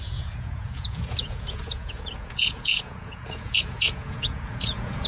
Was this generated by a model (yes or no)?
yes